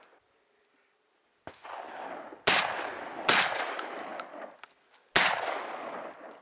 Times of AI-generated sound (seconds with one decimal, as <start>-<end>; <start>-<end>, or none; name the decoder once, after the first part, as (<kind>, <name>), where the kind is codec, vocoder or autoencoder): none